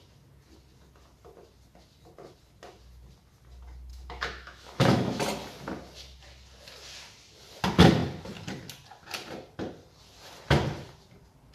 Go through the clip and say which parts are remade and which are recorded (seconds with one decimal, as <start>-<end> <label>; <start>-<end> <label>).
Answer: 0.0-3.9 recorded; 3.9-5.2 remade; 5.2-11.5 recorded